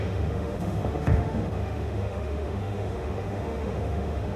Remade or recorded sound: remade